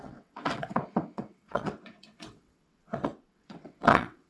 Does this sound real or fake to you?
fake